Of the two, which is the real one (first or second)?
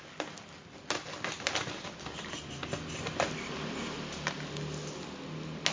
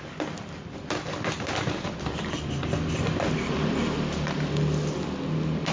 first